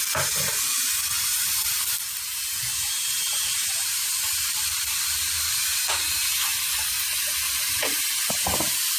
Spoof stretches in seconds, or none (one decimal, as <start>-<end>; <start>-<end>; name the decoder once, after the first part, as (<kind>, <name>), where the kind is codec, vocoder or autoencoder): none